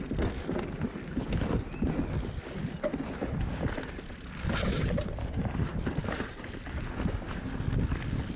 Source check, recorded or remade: recorded